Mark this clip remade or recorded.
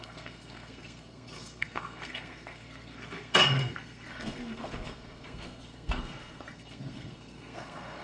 remade